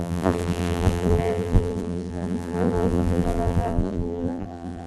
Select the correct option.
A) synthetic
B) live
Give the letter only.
A